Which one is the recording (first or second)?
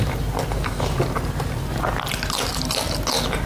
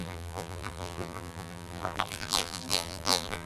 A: first